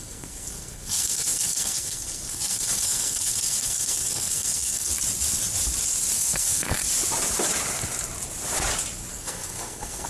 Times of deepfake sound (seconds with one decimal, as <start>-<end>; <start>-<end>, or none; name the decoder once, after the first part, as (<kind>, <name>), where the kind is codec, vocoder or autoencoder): 0.0-4.9 (codec, SNAC); 6.1-6.8; 9.1-10.1